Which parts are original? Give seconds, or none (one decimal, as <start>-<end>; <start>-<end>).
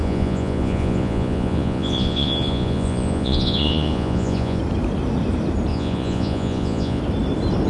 4.6-5.7; 7.0-7.7